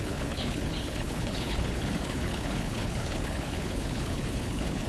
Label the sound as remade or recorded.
remade